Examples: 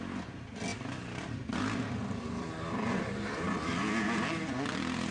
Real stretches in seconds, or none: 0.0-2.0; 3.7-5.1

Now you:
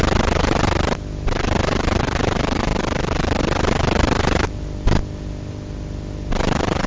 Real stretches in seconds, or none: 0.0-6.9

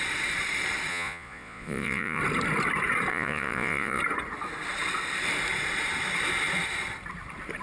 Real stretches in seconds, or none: 0.0-0.9; 2.2-3.1; 4.0-7.6